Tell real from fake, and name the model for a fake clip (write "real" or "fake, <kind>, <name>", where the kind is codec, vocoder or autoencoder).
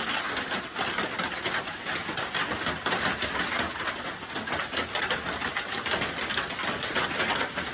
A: real